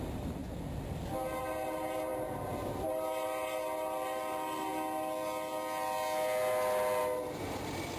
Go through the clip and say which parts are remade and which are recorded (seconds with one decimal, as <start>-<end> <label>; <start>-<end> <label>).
0.0-0.4 remade; 0.4-1.4 recorded; 1.4-4.7 remade; 4.7-7.0 recorded; 7.0-8.0 remade